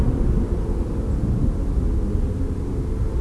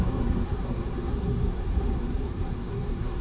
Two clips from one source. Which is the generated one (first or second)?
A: second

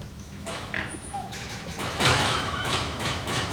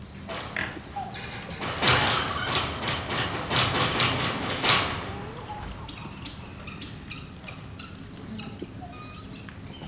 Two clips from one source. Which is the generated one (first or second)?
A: first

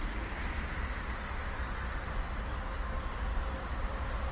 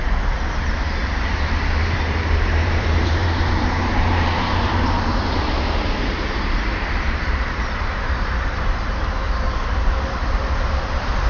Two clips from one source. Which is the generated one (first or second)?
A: second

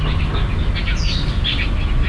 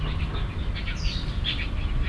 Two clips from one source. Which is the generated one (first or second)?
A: second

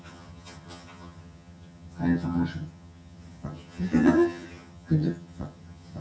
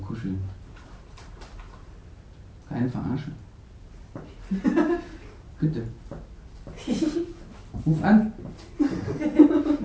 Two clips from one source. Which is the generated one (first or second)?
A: first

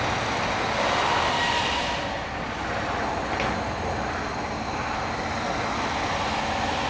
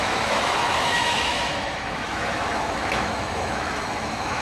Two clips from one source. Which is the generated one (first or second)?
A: second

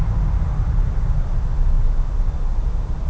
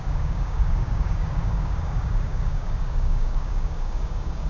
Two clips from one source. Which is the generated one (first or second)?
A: second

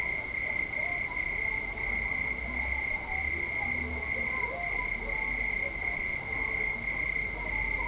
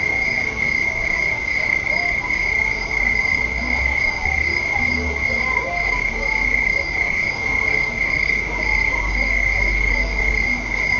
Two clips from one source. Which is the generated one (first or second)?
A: second